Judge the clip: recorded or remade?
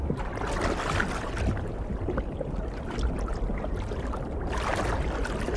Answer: recorded